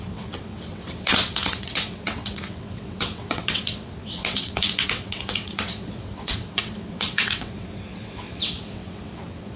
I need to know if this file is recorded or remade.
remade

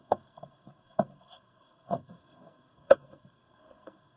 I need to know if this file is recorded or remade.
remade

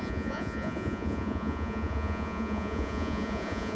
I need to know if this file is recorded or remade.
remade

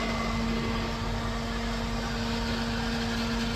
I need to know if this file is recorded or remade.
recorded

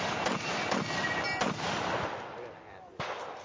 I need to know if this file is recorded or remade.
recorded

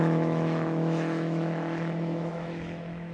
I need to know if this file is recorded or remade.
remade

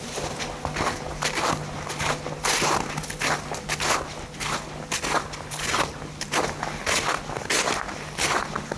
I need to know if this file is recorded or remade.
recorded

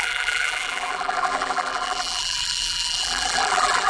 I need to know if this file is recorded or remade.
remade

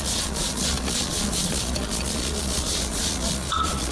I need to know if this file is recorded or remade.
remade